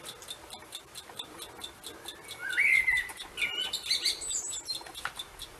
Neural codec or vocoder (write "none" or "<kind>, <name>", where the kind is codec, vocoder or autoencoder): none